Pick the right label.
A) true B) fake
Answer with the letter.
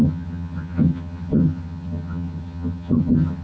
B